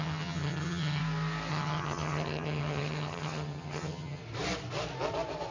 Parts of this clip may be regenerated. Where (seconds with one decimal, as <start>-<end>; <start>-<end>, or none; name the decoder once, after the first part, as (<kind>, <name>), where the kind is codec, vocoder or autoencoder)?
0.0-1.0 (vocoder, HiFi-GAN); 1.5-4.2